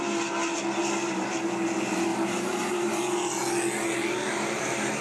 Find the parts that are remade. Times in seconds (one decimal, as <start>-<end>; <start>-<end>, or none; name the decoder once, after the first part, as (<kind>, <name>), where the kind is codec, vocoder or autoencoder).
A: 2.1-3.0 (vocoder, BigVGAN v2)